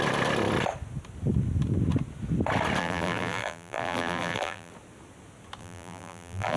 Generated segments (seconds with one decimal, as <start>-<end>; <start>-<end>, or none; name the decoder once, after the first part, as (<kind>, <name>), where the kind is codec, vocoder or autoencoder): 2.8-4.7 (vocoder, BigVGAN v2); 5.6-6.6